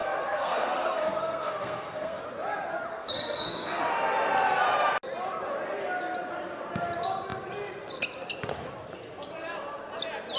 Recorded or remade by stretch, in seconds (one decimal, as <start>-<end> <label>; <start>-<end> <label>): 0.0-2.2 remade; 2.2-2.9 recorded; 2.9-3.8 remade; 3.8-10.4 recorded

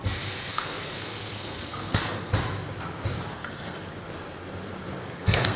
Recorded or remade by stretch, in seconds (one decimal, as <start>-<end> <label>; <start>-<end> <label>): 0.0-0.5 recorded; 0.5-2.3 remade; 2.3-3.3 recorded; 3.3-3.9 remade; 3.9-5.0 recorded; 5.0-5.6 remade